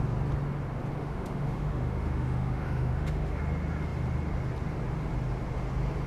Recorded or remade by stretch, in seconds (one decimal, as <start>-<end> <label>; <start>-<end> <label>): 0.0-1.0 recorded; 1.0-3.4 remade; 3.4-6.1 recorded